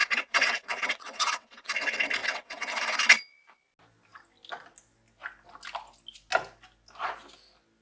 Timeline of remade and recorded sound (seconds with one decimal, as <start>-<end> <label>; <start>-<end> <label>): 0.0-1.7 remade; 1.7-2.2 recorded; 2.2-2.7 remade; 2.7-7.8 recorded

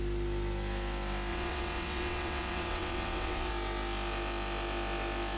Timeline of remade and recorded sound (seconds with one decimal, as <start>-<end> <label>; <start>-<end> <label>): 0.0-1.3 recorded; 1.3-3.5 remade; 3.5-5.4 recorded

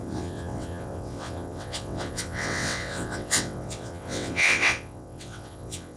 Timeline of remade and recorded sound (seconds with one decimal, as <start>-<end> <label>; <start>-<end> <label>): 0.0-6.0 remade

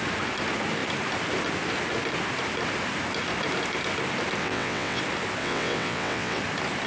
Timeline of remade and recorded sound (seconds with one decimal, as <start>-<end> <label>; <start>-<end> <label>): 0.0-4.4 recorded; 4.4-5.0 remade; 5.0-5.4 recorded; 5.4-6.4 remade; 6.4-6.9 recorded